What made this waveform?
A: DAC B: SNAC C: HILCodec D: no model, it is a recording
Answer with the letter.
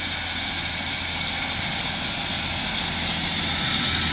D